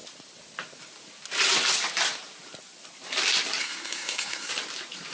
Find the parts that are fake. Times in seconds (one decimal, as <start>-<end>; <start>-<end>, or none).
3.6-4.5